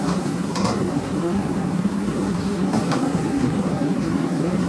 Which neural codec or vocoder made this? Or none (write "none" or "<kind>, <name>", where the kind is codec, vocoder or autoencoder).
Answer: codec, SNAC